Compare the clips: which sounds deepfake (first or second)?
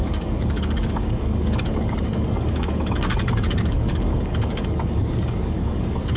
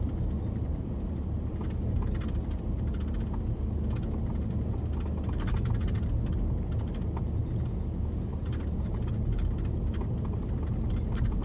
first